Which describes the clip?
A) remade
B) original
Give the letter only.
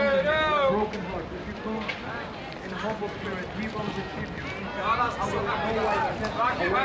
B